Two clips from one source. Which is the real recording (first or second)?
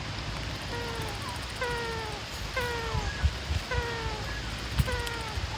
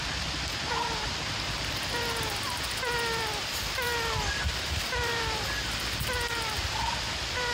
first